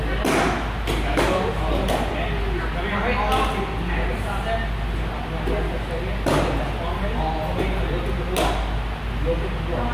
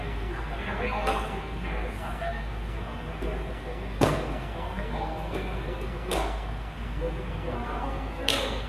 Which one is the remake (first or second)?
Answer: second